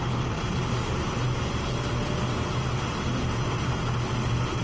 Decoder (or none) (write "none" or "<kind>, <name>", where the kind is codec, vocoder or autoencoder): none